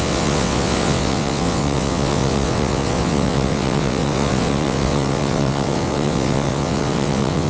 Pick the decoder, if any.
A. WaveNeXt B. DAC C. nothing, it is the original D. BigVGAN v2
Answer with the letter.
A